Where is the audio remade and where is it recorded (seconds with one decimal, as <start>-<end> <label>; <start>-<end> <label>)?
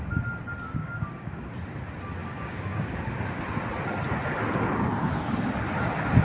0.0-0.8 recorded; 0.8-1.5 remade; 1.5-2.2 recorded; 2.2-3.4 remade; 3.4-6.2 recorded